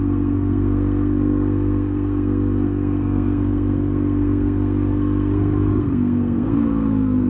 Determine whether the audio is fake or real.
fake